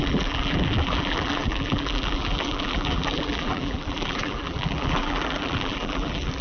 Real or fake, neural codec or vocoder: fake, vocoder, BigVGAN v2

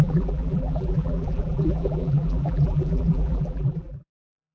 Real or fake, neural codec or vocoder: fake, vocoder, BigVGAN v2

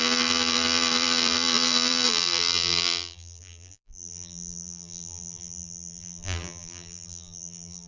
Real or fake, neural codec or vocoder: fake, vocoder, BigVGAN v2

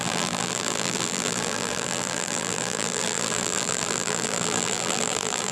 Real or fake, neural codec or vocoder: fake, vocoder, BigVGAN v2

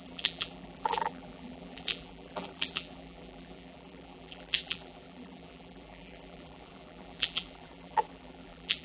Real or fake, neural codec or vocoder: fake, vocoder, BigVGAN v2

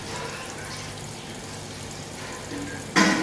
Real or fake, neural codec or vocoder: real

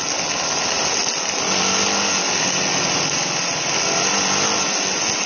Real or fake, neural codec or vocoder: real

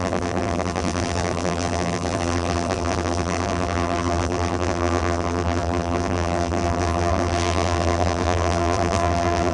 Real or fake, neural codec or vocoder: fake, vocoder, BigVGAN v2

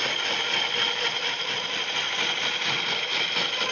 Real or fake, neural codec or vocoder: real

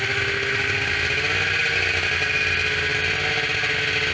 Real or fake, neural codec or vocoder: real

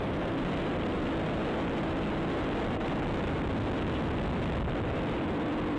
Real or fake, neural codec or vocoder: real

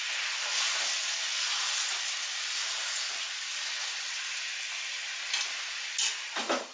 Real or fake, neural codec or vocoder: real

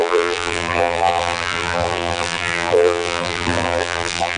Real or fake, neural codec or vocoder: fake, vocoder, BigVGAN v2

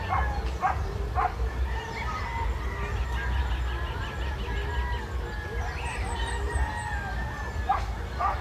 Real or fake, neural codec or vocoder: real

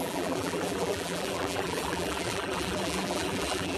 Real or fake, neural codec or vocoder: fake, vocoder, BigVGAN v2